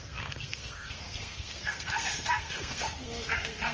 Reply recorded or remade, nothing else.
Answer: remade